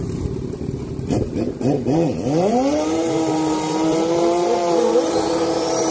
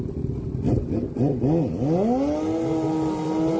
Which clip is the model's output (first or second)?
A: first